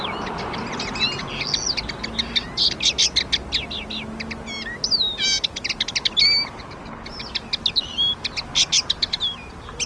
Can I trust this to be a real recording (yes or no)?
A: yes